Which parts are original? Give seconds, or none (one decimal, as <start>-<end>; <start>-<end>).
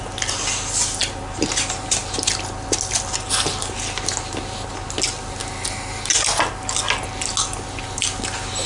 0.0-8.7